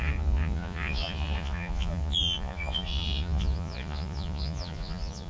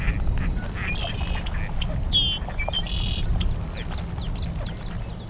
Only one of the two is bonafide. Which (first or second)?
second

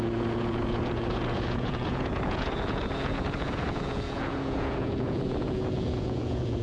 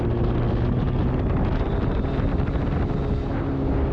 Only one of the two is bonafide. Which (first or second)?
second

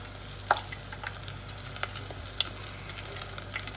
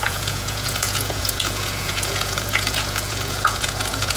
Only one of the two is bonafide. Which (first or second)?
first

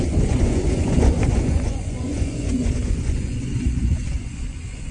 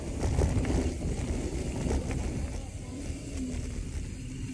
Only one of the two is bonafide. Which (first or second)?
second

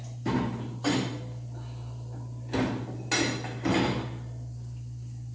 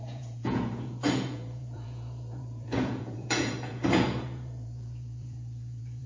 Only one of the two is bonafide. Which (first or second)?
first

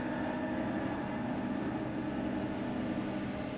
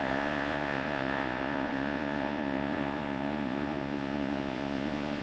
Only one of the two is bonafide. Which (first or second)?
first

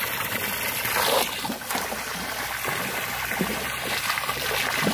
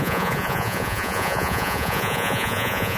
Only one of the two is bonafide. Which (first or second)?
first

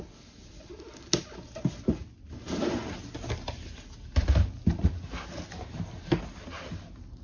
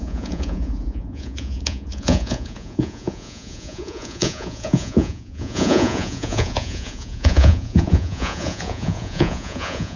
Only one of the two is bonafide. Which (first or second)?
first